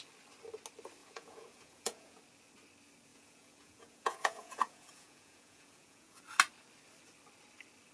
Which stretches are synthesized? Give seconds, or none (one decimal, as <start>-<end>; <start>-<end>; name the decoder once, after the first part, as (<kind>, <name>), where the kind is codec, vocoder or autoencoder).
1.0-2.2 (vocoder, Vocos); 3.1-6.2